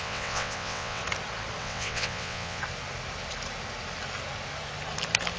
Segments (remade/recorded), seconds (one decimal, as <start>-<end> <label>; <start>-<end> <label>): 0.0-1.0 remade; 1.0-1.6 recorded; 1.6-2.6 remade; 2.6-5.4 recorded